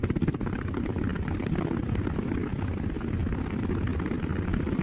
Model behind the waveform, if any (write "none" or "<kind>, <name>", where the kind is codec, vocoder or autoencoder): none